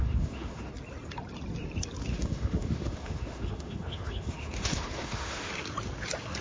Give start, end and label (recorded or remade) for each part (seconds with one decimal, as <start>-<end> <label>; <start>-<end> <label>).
0.0-0.7 remade; 0.7-2.1 recorded; 2.1-5.5 remade; 5.5-6.4 recorded